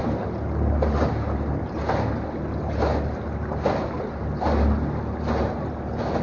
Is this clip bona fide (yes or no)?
yes